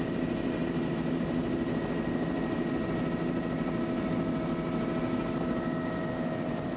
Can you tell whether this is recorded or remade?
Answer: recorded